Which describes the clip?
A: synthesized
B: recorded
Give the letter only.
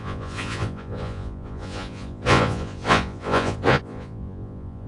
A